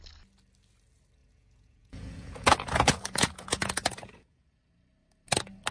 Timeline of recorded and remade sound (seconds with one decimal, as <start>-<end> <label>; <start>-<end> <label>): 0.0-1.2 recorded; 1.2-4.6 remade; 4.6-5.7 recorded